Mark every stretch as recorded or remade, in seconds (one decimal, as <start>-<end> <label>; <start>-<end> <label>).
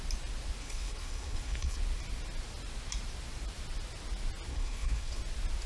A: 0.0-0.6 recorded; 0.6-1.8 remade; 1.8-4.5 recorded; 4.5-5.2 remade; 5.2-5.7 recorded